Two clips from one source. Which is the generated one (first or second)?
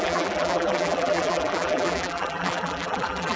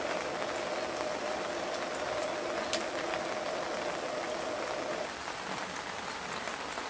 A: first